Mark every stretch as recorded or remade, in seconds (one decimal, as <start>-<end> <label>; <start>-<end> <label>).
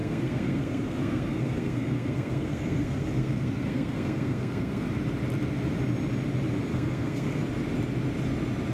0.0-4.9 remade; 4.9-6.7 recorded; 6.7-7.4 remade; 7.4-8.7 recorded